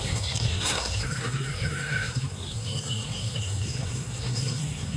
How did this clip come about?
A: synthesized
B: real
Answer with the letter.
A